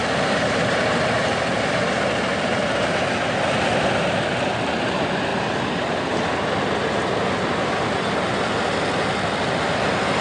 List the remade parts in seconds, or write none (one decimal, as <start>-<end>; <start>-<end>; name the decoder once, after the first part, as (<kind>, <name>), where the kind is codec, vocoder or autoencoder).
0.0-0.8 (vocoder, BigVGAN v2); 2.3-3.1; 5.3-5.9